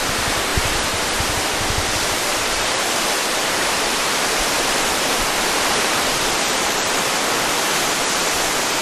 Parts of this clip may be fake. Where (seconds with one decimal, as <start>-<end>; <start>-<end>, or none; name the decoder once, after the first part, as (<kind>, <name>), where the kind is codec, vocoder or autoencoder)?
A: 2.3-6.9 (vocoder, BigVGAN v2)